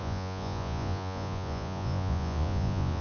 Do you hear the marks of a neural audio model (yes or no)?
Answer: yes